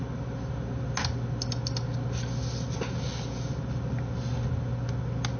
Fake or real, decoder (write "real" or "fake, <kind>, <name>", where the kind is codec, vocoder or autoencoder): real